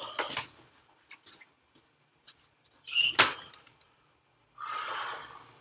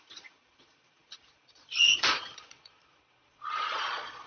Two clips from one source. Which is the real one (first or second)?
first